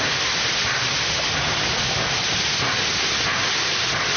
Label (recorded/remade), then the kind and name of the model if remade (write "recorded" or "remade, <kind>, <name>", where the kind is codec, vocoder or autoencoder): recorded